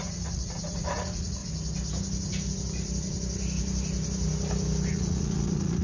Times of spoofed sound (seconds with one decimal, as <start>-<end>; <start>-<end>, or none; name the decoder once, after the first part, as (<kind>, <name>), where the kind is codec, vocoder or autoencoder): 0.0-1.4 (vocoder, Vocos); 4.9-5.8

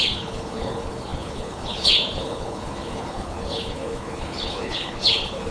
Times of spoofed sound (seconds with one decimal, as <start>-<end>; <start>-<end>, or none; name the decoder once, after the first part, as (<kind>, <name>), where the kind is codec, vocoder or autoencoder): 0.0-5.5 (codec, HILCodec)

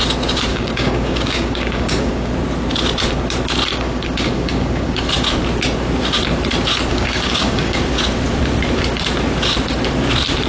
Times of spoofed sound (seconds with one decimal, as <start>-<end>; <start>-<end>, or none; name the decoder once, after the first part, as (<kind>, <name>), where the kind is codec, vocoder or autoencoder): 0.5-2.3 (codec, DAC); 3.7-5.1; 6.9-7.8